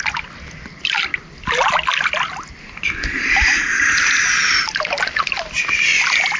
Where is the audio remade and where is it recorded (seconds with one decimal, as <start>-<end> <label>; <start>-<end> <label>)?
0.0-6.4 recorded